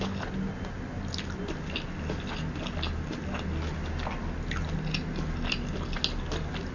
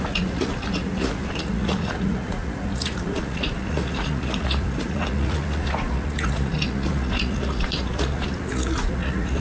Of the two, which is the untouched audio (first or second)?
first